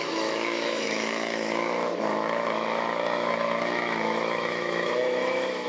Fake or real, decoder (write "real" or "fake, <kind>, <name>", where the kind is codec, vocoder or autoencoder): fake, autoencoder, DAC-VAE